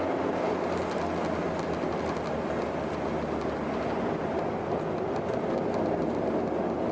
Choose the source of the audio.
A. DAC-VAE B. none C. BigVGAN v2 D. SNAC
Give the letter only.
B